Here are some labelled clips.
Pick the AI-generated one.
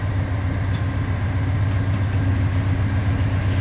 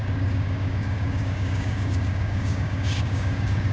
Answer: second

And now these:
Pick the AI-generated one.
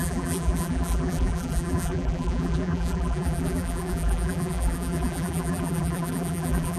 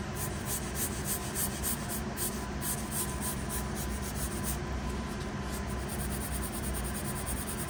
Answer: first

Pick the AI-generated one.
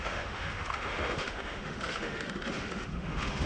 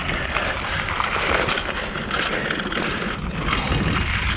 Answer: first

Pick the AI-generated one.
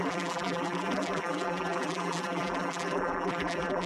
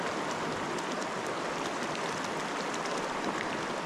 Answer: first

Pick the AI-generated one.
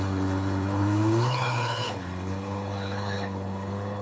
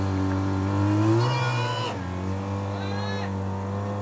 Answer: first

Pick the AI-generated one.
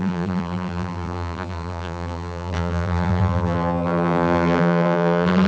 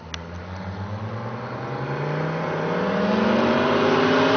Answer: first